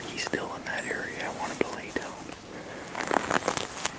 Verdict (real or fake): real